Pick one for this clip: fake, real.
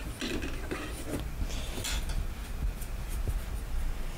real